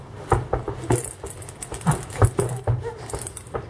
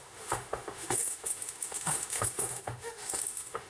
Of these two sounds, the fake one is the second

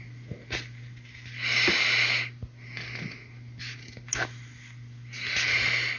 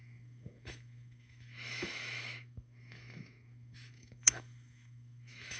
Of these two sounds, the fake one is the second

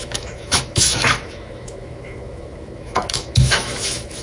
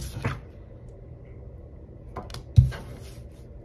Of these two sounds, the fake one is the first